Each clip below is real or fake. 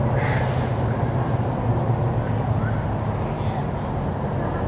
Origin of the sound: real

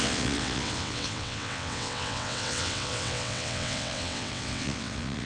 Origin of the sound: fake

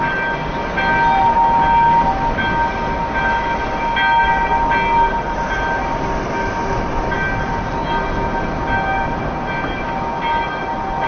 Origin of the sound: real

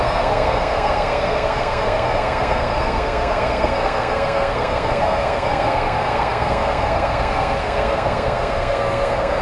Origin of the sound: fake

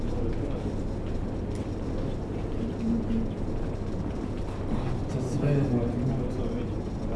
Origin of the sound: real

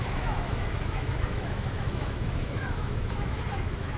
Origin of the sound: fake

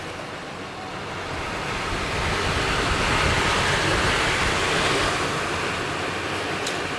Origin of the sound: real